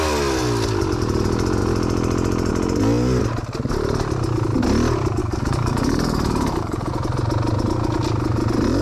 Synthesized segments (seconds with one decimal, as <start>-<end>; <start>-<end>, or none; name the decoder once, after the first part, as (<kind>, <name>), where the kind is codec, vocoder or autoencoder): 5.2-6.9 (codec, DAC)